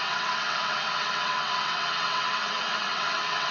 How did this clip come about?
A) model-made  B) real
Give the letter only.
A